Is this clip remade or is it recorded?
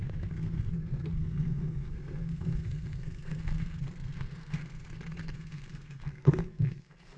remade